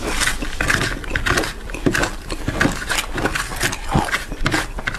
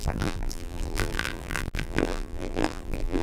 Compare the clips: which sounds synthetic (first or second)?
second